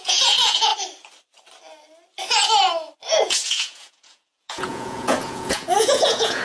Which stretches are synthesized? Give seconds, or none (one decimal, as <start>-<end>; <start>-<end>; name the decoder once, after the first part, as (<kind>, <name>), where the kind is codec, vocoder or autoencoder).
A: 0.0-0.7 (vocoder, Vocos); 3.2-6.4